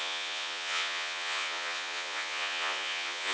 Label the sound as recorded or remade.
remade